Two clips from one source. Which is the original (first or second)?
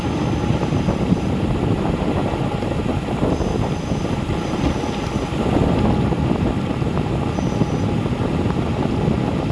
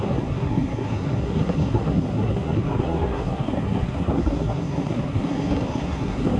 first